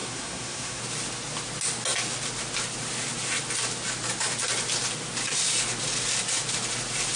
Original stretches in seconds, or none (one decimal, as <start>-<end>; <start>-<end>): 0.8-7.2